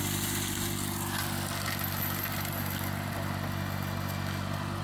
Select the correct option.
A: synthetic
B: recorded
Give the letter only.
B